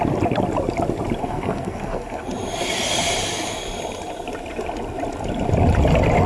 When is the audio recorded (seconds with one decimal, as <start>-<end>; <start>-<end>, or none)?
0.0-1.2; 2.3-6.3

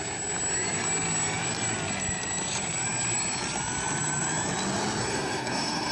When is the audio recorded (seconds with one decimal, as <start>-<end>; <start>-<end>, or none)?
0.0-5.0